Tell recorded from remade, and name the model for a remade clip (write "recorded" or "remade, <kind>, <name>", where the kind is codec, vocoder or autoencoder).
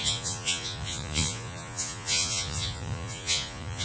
remade, vocoder, Vocos